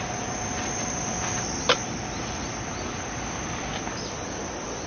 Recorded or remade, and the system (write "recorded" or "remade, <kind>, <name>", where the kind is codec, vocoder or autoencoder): recorded